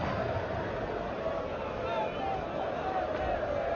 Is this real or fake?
real